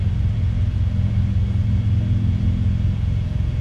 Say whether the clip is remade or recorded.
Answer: recorded